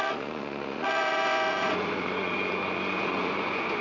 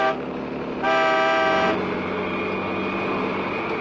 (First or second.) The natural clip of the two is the second